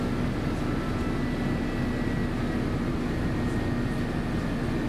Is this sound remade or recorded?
recorded